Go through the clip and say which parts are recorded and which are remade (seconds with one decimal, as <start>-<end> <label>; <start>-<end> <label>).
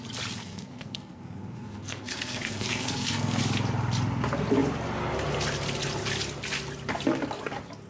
0.0-0.4 recorded; 0.4-3.4 remade; 3.4-7.9 recorded